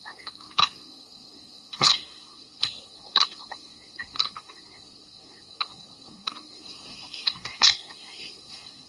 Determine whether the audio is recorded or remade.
remade